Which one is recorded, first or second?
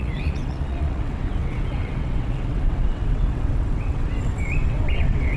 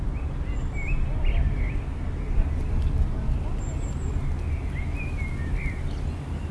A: second